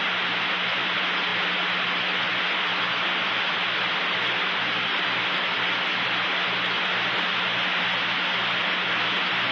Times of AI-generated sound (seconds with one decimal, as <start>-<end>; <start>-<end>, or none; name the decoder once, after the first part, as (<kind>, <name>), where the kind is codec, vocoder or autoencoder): none